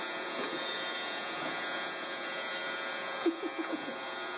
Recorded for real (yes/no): no